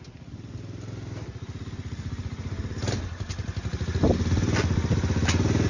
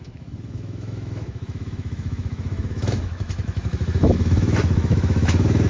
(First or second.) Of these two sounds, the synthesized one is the second